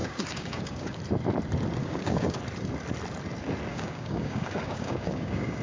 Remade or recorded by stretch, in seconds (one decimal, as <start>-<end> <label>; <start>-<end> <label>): 0.0-1.0 remade; 1.0-1.8 recorded; 1.8-2.4 remade; 2.4-3.7 recorded; 3.7-5.6 remade